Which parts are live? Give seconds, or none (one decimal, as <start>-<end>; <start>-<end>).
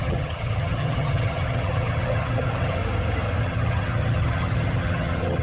2.8-3.4